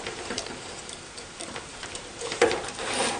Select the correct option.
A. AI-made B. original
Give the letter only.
A